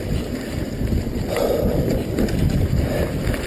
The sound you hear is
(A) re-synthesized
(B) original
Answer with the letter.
B